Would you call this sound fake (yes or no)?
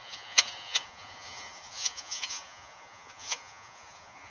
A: yes